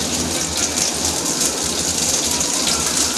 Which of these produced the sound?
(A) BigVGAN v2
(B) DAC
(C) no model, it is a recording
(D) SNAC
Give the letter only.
C